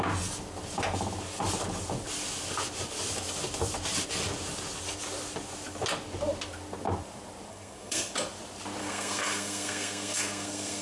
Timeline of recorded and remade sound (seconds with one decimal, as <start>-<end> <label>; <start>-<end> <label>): 0.0-7.5 recorded; 7.5-8.1 remade; 8.1-8.8 recorded; 8.8-10.8 remade